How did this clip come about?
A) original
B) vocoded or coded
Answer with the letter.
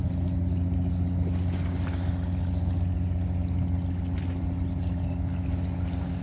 A